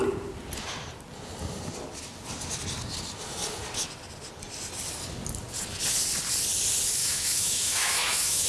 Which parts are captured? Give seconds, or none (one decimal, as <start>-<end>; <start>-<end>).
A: 0.0-7.0